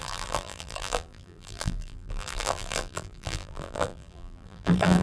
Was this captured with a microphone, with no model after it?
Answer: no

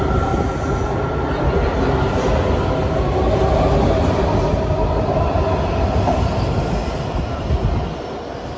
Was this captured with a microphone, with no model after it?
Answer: yes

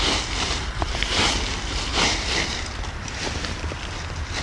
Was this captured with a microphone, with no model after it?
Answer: no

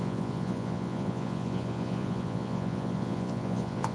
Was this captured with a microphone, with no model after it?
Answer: no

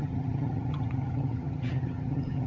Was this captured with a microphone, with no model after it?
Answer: no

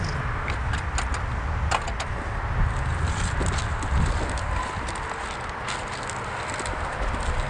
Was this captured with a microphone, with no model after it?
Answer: yes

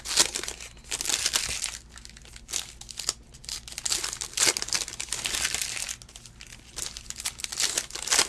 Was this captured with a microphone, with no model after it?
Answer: yes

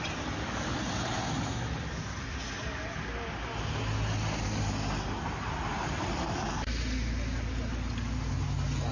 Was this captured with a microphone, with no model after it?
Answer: yes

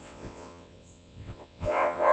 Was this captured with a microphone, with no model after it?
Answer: no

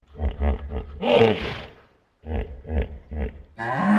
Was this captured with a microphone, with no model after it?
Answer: no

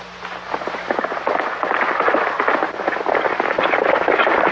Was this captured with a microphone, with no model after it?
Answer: yes